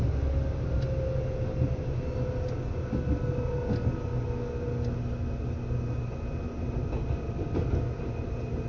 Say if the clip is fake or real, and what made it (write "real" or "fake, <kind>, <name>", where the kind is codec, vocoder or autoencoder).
real